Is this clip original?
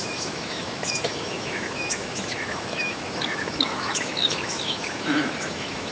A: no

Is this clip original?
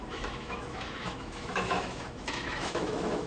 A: no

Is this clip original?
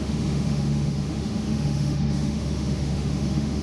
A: no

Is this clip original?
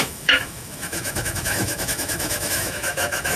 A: no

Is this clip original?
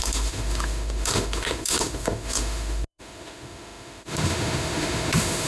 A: no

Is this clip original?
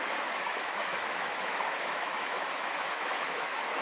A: no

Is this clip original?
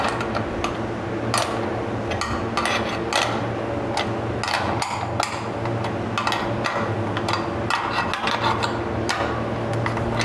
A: yes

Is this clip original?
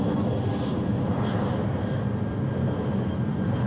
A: yes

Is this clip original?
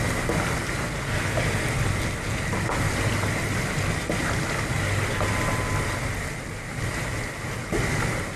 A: yes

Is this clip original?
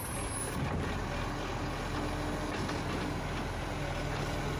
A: yes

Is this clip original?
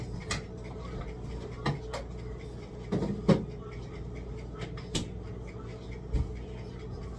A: yes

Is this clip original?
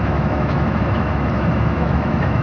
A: no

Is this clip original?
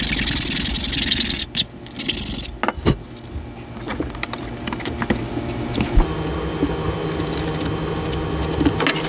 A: yes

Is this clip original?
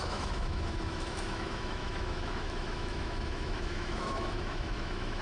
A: no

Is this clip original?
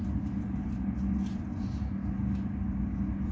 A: yes